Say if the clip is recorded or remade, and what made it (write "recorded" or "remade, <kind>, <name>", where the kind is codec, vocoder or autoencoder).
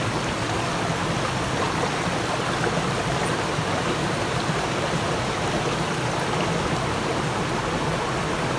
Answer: recorded